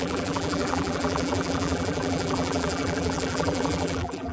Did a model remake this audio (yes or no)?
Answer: yes